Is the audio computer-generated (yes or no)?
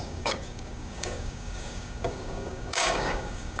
yes